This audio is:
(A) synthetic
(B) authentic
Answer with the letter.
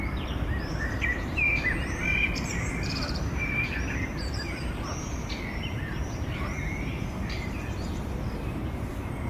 A